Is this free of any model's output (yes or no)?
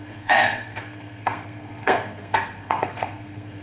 no